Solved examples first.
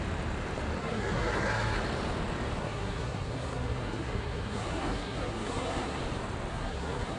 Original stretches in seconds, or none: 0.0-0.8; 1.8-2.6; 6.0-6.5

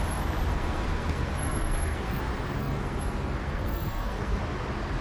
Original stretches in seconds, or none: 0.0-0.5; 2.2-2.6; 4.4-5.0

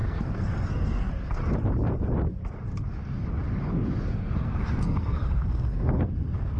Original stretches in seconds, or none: 1.1-4.1